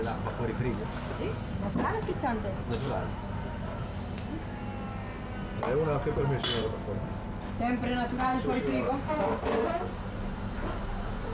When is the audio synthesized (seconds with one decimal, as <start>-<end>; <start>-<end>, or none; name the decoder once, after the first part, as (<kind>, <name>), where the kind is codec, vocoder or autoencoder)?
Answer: none